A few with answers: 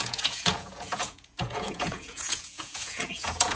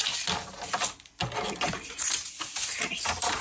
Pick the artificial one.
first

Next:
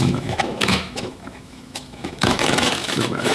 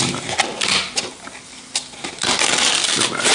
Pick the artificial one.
first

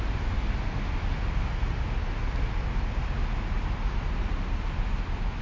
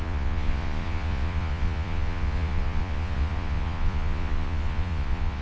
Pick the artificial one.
second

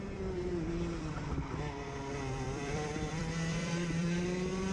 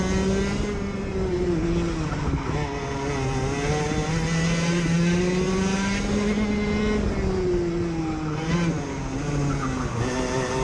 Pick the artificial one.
first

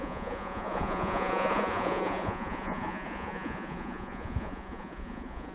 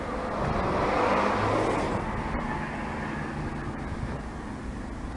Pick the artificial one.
first